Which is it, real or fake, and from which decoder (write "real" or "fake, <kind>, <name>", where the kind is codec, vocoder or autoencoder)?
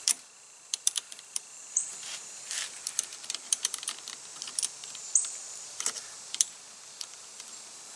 fake, vocoder, BigVGAN v2